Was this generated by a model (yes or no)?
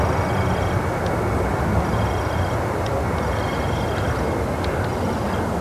no